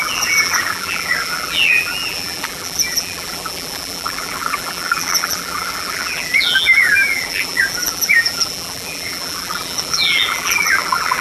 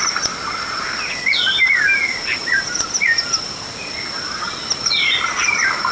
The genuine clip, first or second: second